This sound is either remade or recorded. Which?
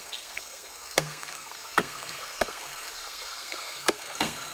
remade